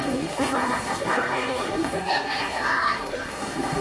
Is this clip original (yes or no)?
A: no